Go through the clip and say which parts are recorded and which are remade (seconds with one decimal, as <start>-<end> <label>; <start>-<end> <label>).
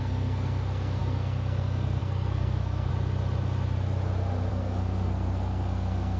0.0-2.9 remade; 2.9-4.5 recorded; 4.5-6.2 remade